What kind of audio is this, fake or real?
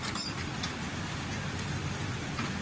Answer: real